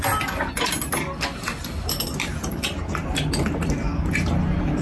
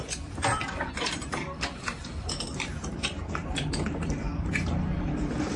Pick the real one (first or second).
first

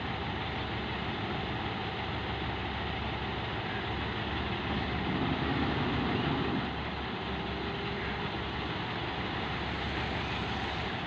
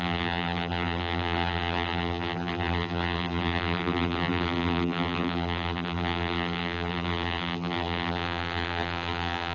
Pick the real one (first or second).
first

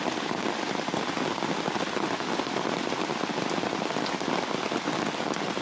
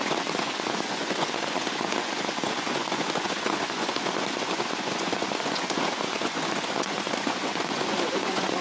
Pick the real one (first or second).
first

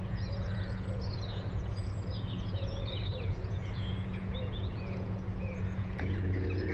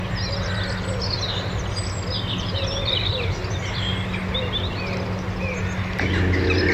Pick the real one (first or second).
second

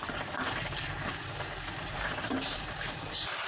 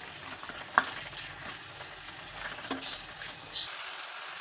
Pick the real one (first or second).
second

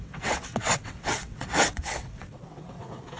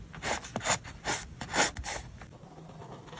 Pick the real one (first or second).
second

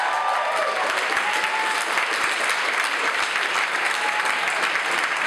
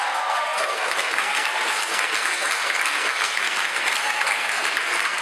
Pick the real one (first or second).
first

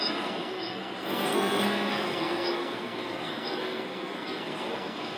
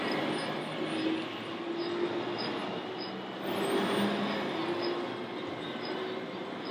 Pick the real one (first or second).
second